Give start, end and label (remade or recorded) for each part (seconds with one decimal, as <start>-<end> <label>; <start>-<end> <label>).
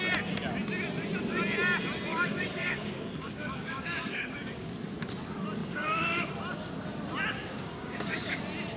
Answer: 0.0-2.1 recorded; 2.1-4.7 remade; 4.7-5.6 recorded; 5.6-6.3 remade; 6.3-7.4 recorded; 7.4-8.4 remade; 8.4-8.8 recorded